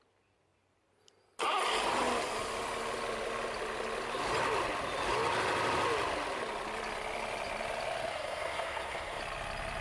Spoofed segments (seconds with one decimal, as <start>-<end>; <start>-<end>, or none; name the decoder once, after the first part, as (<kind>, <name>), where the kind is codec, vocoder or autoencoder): 8.1-9.2 (codec, SNAC)